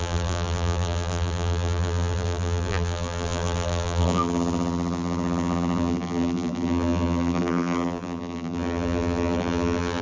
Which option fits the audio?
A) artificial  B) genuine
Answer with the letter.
A